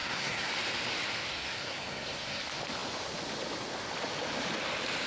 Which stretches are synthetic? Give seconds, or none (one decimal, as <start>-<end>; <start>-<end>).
0.0-0.5; 1.3-2.4